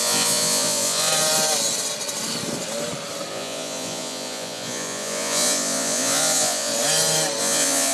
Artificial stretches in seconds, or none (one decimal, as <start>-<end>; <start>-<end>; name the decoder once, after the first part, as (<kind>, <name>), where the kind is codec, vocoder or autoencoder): 0.0-1.1 (vocoder, Vocos); 3.3-6.7; 7.4-7.9